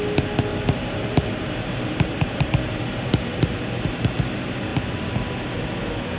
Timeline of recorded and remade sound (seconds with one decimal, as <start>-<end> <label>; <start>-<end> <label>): 0.0-0.5 recorded; 0.5-4.2 remade; 4.2-6.2 recorded